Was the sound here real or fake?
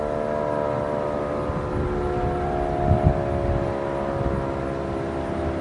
real